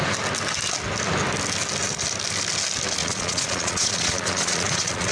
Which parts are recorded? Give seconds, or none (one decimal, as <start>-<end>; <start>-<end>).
0.0-3.0